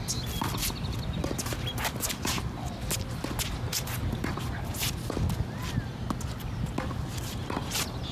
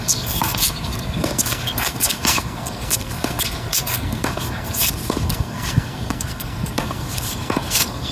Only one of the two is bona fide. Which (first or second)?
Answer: first